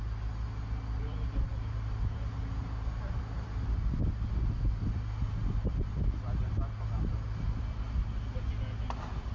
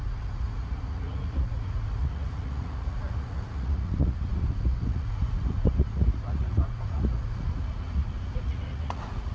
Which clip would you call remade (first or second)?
second